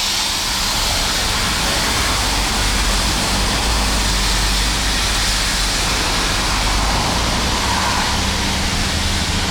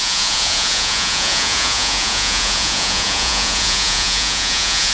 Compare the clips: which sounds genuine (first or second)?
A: first